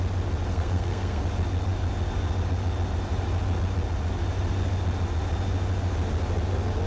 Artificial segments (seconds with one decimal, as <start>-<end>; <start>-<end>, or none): 0.5-1.2